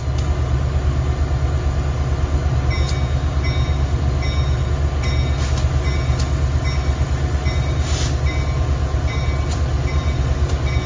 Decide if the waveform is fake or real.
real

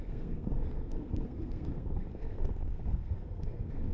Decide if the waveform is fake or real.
fake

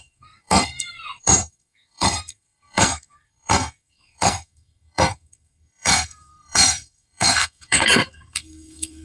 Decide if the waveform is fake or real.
fake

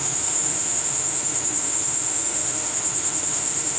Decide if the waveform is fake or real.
fake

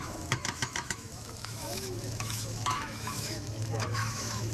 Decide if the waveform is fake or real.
fake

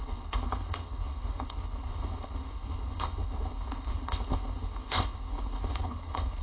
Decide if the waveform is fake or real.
fake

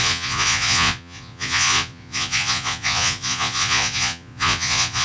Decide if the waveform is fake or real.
fake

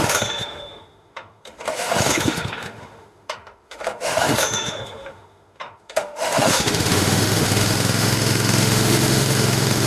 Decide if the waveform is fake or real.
fake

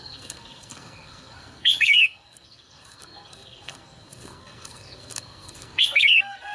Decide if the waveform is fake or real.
fake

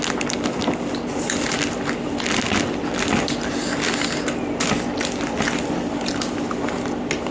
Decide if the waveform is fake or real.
real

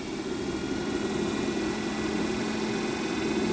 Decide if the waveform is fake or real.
real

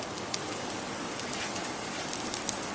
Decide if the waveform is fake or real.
fake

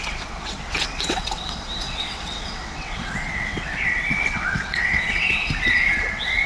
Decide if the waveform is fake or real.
fake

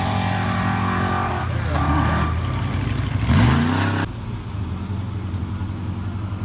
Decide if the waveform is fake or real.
real